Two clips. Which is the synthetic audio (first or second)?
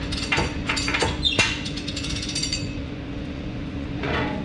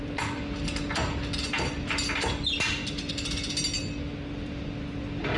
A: first